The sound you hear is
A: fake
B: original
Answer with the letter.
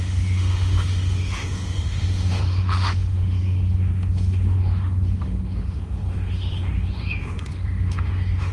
A